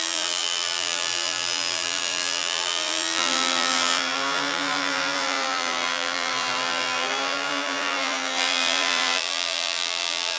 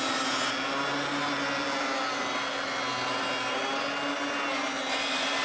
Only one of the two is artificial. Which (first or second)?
first